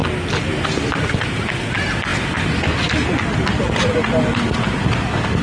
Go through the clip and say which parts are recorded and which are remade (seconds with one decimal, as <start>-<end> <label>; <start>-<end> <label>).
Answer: 0.0-5.4 recorded